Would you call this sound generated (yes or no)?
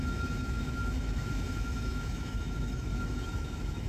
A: yes